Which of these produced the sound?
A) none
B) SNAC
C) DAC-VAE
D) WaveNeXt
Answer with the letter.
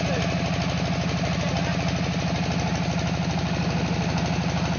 A